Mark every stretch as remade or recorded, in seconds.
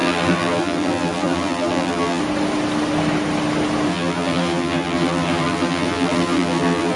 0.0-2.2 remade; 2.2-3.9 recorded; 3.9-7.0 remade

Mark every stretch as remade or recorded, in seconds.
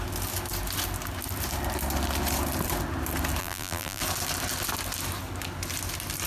0.0-3.4 recorded; 3.4-4.0 remade; 4.0-6.3 recorded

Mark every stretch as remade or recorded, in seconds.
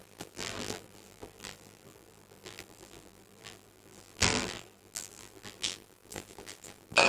0.0-7.1 remade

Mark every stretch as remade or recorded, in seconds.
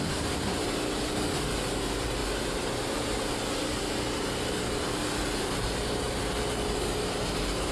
0.0-7.7 recorded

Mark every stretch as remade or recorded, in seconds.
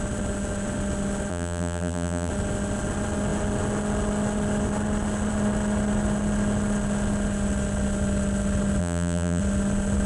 0.0-1.3 recorded; 1.3-2.3 remade; 2.3-8.8 recorded; 8.8-9.4 remade; 9.4-10.1 recorded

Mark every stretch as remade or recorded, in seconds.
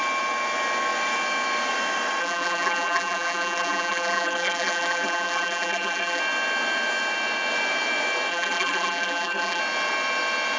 0.0-2.2 recorded; 2.2-6.2 remade; 6.2-8.3 recorded; 8.3-9.6 remade; 9.6-10.6 recorded